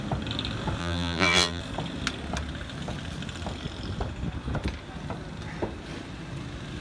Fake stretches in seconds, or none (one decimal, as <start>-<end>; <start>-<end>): 0.8-1.6